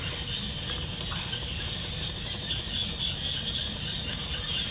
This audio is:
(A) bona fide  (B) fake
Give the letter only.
A